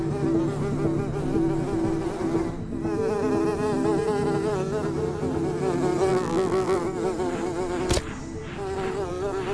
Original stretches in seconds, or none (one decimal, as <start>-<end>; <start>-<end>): 0.0-6.1; 6.8-9.5